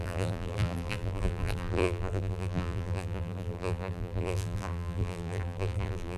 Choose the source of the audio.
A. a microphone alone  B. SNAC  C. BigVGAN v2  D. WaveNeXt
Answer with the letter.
C